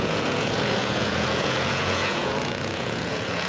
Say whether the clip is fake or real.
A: fake